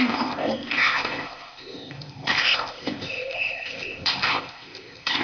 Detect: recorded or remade remade